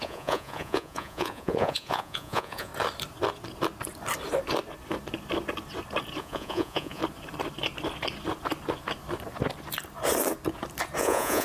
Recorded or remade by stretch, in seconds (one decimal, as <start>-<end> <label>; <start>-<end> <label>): 0.0-2.7 remade; 2.7-6.2 recorded; 6.2-7.0 remade; 7.0-11.0 recorded; 11.0-11.4 remade